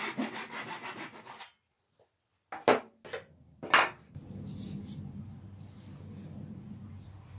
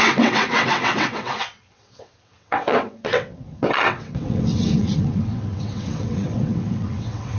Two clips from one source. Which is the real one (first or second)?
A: first